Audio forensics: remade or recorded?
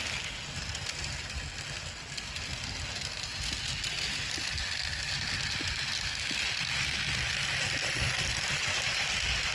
recorded